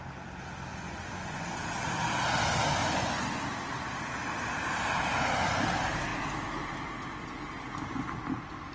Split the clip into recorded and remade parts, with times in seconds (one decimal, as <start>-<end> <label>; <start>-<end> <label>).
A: 0.0-0.7 recorded; 0.7-1.7 remade; 1.7-2.8 recorded; 2.8-3.4 remade; 3.4-8.7 recorded